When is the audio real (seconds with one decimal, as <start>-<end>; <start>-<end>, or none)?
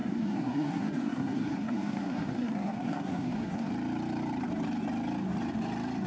3.7-6.1